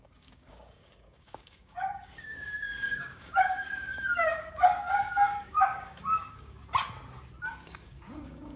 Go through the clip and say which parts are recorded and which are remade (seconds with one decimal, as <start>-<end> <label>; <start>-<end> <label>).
0.0-6.6 remade; 6.6-7.5 recorded; 7.5-8.6 remade

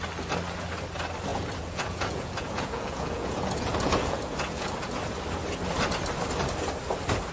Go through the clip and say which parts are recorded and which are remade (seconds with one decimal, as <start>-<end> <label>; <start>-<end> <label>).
0.0-1.3 recorded; 1.3-4.9 remade; 4.9-7.3 recorded

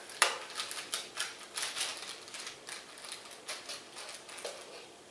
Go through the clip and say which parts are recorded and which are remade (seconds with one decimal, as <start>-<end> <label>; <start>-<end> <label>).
0.0-5.1 recorded

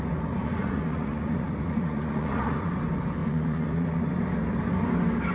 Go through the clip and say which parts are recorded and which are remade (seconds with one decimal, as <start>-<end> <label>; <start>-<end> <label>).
0.0-0.4 recorded; 0.4-2.7 remade; 2.7-3.2 recorded; 3.2-4.0 remade; 4.0-5.3 recorded